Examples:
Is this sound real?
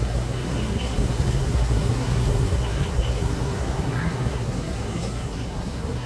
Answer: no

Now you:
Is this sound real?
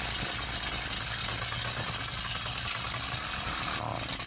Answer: yes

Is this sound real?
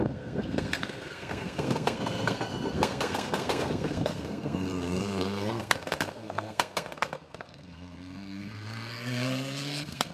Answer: no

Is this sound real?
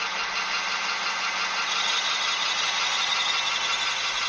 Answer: yes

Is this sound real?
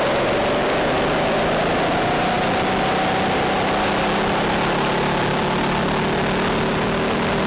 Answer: yes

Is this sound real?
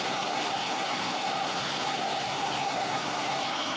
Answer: no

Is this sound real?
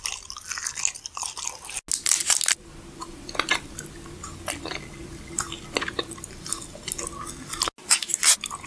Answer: yes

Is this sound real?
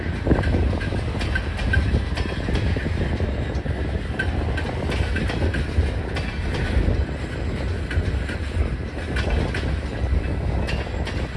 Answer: yes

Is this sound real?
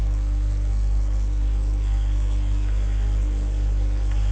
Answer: no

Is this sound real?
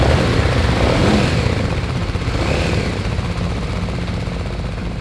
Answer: yes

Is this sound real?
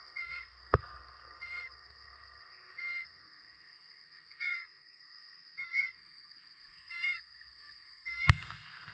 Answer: no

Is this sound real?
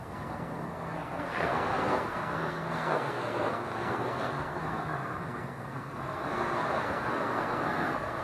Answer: no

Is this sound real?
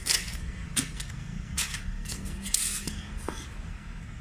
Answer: no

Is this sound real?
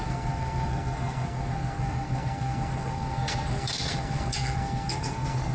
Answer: no